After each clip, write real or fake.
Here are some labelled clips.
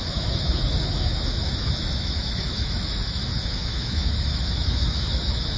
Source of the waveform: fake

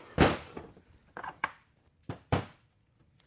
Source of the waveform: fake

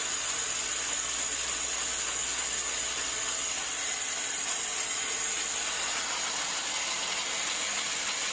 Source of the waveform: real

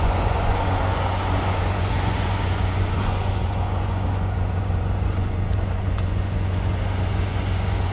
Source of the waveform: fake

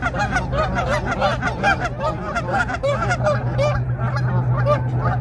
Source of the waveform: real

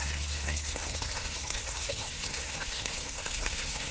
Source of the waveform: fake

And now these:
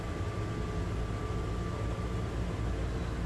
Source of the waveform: real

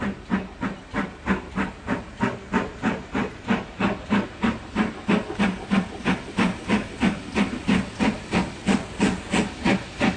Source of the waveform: real